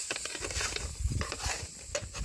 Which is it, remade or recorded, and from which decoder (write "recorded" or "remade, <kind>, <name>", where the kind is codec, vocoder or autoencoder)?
remade, vocoder, BigVGAN v2